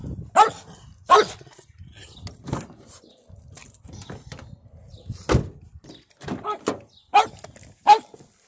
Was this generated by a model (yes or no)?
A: no